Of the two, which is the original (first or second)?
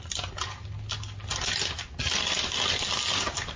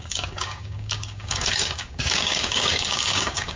first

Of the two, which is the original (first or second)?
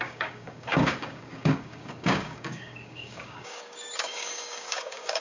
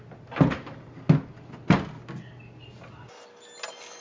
second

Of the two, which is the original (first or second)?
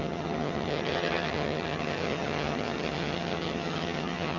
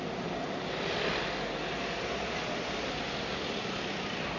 second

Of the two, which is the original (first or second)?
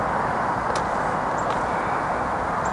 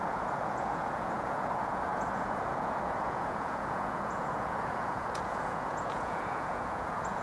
first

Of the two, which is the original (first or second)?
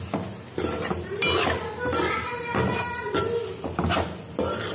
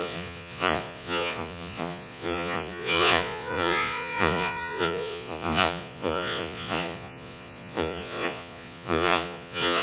first